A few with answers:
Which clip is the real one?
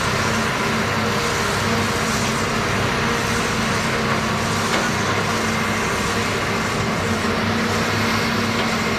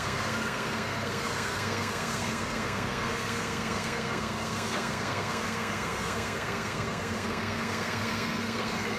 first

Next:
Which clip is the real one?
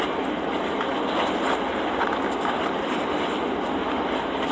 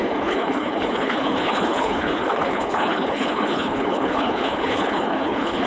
first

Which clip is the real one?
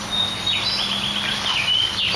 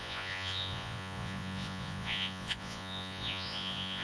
first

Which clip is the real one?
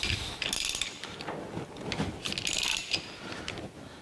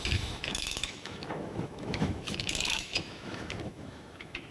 first